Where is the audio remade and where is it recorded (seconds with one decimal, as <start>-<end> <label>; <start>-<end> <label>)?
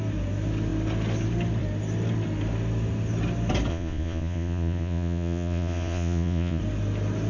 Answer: 0.0-3.7 recorded; 3.7-6.6 remade; 6.6-7.3 recorded